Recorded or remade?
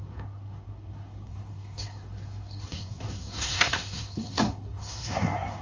remade